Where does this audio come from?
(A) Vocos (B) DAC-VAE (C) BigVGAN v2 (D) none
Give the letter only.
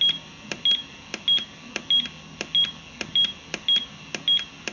D